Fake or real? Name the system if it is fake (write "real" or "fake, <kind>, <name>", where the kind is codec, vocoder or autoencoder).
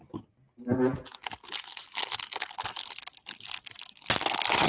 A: real